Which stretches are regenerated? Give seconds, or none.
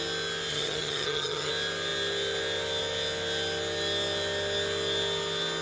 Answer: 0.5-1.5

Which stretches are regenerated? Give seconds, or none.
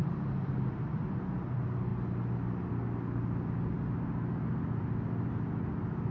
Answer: none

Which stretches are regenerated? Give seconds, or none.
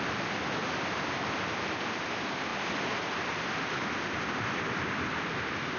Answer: none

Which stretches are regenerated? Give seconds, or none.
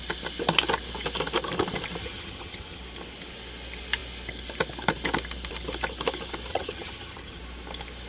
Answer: 2.0-2.8; 6.5-7.4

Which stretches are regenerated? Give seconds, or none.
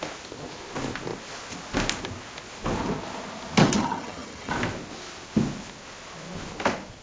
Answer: 3.6-4.5